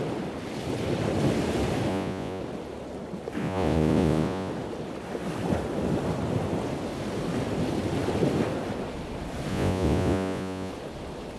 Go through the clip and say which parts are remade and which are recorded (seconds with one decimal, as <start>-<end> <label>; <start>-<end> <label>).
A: 0.0-1.9 recorded; 1.9-2.4 remade; 2.4-3.4 recorded; 3.4-4.5 remade; 4.5-9.5 recorded; 9.5-10.7 remade; 10.7-11.4 recorded